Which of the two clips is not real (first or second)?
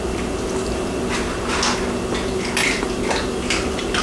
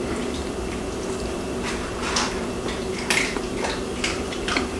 second